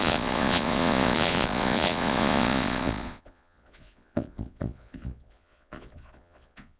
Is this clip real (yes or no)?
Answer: no